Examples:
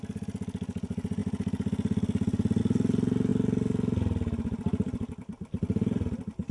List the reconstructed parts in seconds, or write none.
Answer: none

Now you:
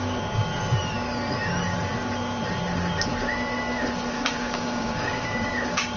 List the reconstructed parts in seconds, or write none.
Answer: 0.0-0.5 (codec, DAC); 4.1-6.0

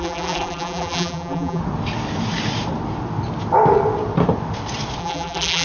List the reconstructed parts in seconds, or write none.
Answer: 0.0-1.6 (vocoder, BigVGAN v2); 5.0-5.6

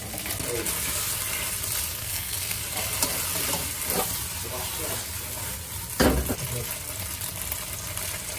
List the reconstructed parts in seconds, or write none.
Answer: 2.0-2.6 (codec, SNAC)

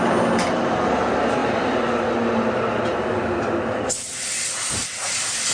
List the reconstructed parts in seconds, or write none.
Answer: none

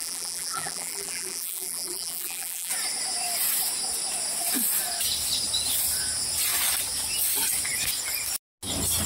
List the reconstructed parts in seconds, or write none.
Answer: 0.0-2.7 (vocoder, BigVGAN v2)